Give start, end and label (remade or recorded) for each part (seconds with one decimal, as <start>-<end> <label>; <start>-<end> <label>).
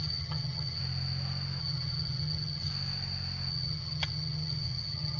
0.0-0.8 remade; 0.8-1.6 recorded; 1.6-2.7 remade; 2.7-3.5 recorded; 3.5-5.2 remade